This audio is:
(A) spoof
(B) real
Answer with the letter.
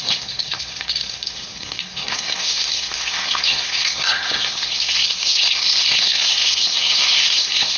A